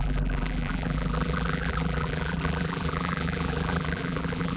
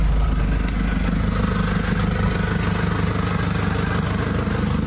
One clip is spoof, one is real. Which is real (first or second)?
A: second